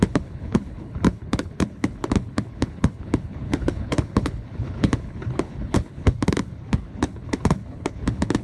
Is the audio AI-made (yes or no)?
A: yes